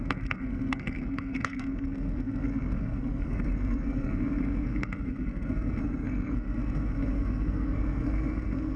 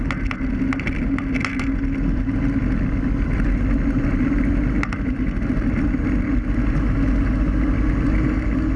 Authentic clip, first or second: second